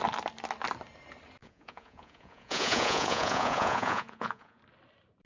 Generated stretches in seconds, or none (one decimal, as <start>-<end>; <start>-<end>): 1.4-4.6